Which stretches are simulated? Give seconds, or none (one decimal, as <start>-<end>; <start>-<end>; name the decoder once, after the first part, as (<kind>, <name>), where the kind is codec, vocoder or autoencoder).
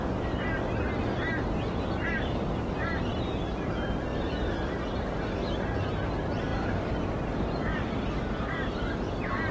1.1-3.4 (vocoder, BigVGAN v2); 4.1-4.7; 6.5-9.1